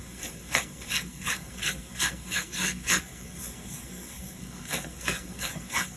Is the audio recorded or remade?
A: remade